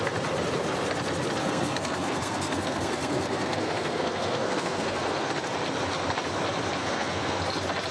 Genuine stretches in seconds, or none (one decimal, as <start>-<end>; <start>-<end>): 0.0-1.4; 5.3-6.8; 7.4-7.9